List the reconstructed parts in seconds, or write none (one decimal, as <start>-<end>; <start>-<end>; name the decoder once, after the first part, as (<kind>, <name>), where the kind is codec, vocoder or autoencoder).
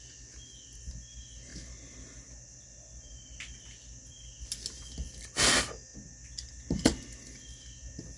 none